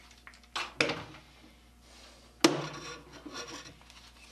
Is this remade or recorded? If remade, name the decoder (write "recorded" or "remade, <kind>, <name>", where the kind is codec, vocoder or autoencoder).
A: recorded